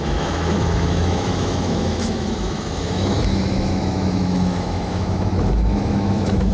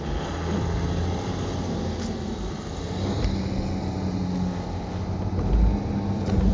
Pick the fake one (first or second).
first